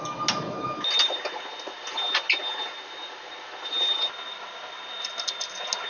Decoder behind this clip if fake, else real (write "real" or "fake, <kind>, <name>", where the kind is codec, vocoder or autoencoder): real